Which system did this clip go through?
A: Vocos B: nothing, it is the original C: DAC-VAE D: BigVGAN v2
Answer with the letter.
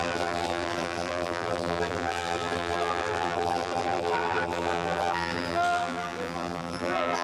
D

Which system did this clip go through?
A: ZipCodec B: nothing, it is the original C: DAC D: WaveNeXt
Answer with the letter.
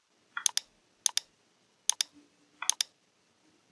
B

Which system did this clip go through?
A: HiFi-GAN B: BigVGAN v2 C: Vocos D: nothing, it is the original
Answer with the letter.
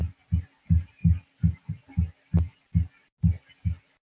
D